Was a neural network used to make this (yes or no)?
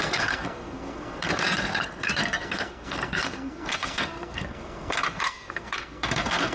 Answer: yes